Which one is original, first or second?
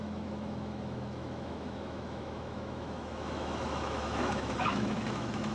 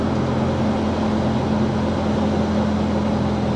second